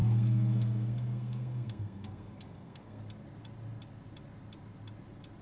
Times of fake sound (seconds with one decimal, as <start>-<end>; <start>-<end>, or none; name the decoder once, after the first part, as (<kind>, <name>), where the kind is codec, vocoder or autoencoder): 0.0-3.0 (codec, SNAC)